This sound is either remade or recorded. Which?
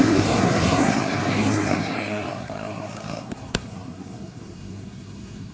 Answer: remade